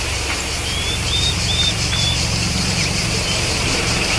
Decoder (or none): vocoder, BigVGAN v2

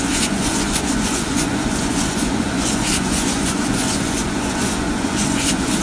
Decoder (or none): vocoder, Vocos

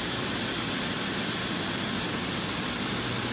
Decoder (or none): none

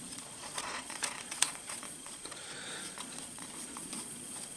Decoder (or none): vocoder, Vocos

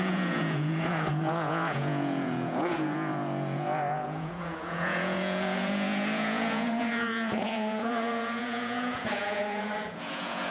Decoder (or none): vocoder, Vocos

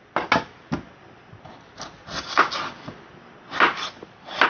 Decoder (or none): none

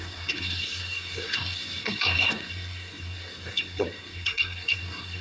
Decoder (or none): codec, SNAC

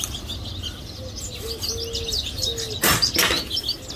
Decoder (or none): none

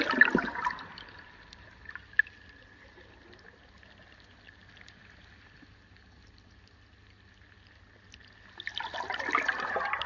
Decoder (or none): none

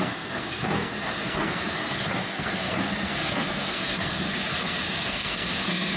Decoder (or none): codec, SNAC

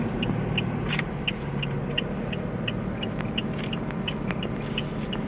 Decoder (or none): none